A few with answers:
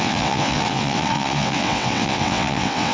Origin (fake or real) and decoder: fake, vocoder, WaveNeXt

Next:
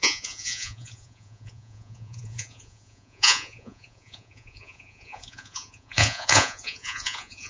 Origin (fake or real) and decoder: fake, vocoder, Vocos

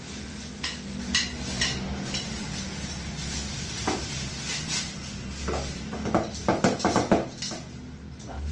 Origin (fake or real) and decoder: real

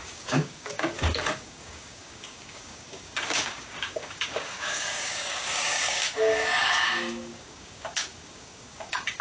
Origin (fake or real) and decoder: fake, codec, DAC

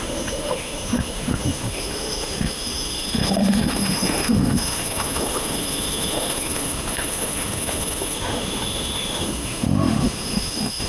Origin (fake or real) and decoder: fake, autoencoder, DAC-VAE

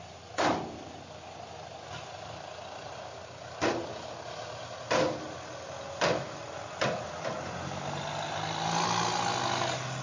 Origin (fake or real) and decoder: real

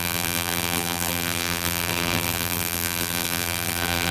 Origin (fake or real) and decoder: fake, vocoder, BigVGAN v2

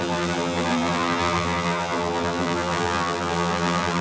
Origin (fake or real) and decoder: fake, vocoder, BigVGAN v2